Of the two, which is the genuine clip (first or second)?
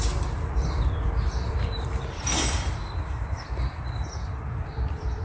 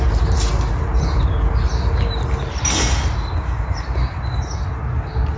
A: second